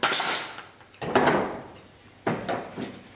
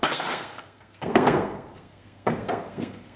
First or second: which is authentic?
first